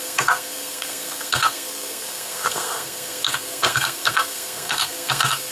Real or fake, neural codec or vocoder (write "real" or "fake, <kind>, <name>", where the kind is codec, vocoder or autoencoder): fake, codec, SNAC